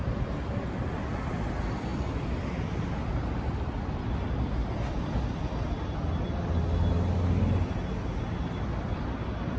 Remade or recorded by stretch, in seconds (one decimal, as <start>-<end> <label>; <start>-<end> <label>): 0.0-9.6 recorded